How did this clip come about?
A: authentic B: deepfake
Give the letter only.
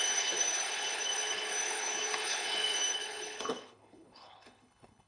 B